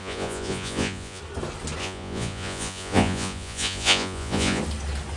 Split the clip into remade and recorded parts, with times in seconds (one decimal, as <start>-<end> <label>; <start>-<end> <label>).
0.0-1.2 remade; 1.2-1.8 recorded; 1.8-4.6 remade; 4.6-5.2 recorded